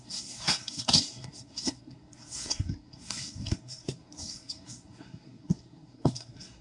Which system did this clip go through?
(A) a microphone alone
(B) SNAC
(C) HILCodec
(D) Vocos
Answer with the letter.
B